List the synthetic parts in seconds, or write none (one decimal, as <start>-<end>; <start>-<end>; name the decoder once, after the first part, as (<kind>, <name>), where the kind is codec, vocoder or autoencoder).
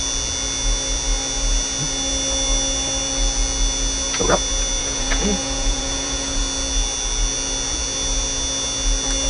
4.8-6.4 (vocoder, Vocos)